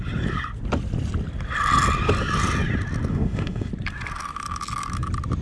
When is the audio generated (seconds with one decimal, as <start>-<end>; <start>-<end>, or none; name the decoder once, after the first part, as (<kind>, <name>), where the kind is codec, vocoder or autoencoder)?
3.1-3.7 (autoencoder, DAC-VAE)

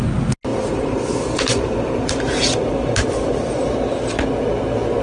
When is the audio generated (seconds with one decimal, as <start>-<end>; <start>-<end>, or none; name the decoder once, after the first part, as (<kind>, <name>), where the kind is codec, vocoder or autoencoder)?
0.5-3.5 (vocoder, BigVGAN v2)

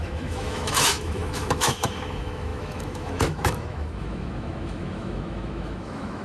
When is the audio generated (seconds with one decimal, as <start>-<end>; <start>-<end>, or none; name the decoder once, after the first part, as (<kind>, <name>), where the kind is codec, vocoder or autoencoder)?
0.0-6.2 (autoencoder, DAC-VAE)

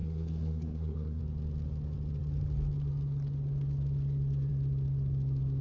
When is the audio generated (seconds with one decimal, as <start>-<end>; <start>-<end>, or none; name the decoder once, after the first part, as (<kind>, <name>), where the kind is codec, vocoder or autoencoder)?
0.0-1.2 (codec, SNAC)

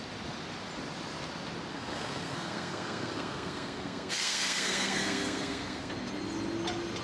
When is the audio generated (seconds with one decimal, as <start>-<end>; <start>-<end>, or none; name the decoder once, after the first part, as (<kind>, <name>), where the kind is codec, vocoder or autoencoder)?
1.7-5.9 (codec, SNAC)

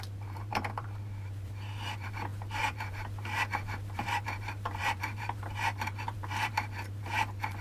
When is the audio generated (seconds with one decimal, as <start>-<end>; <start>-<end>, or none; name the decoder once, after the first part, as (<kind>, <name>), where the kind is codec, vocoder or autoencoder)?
0.0-7.6 (vocoder, BigVGAN v2)

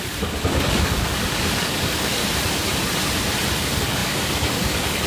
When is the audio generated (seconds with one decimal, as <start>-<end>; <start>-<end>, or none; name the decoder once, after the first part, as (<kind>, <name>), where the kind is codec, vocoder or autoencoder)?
0.0-2.2 (codec, DAC); 3.6-5.1